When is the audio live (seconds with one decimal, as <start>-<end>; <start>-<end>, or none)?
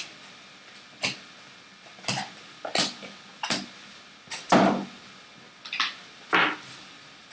0.0-7.3